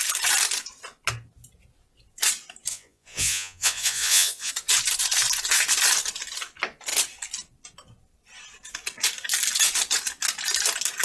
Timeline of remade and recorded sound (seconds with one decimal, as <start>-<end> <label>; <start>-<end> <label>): 0.0-2.7 recorded; 2.7-4.5 remade; 4.5-11.0 recorded